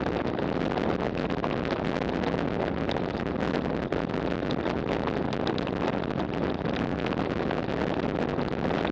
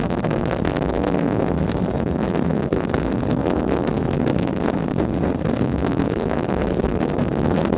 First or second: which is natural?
first